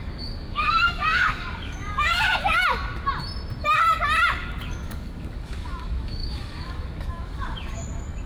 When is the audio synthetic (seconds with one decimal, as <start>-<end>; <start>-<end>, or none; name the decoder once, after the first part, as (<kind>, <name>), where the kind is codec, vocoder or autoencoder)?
0.0-2.6 (codec, DAC); 4.3-8.3